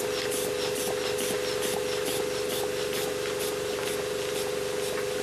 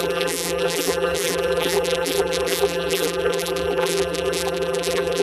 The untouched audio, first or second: first